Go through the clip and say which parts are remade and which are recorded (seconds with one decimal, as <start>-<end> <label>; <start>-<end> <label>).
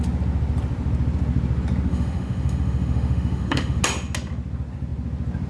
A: 0.0-1.9 recorded; 1.9-3.8 remade; 3.8-5.5 recorded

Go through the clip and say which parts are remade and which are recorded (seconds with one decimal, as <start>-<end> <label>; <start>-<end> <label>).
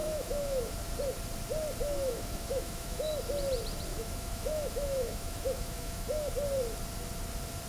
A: 0.0-0.7 remade; 0.7-1.8 recorded; 1.8-3.1 remade; 3.1-3.9 recorded; 3.9-6.3 remade; 6.3-7.7 recorded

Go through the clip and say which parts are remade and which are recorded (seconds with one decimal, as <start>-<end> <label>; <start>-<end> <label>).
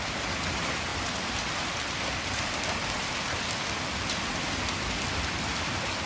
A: 0.0-6.0 recorded